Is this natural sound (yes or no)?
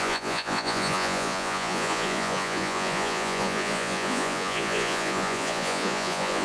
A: no